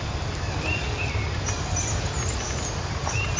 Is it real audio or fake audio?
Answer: real